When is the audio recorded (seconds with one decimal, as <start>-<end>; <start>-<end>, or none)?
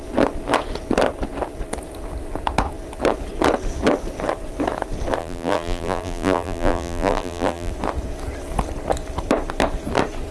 0.0-5.2; 7.7-10.3